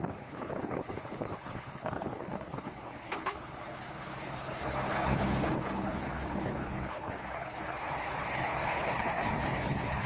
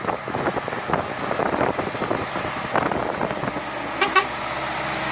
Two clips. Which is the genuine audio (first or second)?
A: second